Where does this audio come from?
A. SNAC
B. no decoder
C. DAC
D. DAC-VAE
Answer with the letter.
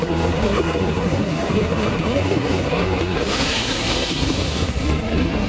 A